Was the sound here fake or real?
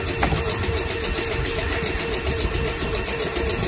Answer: real